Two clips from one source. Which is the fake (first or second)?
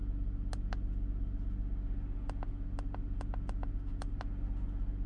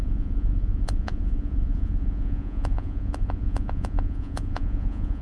second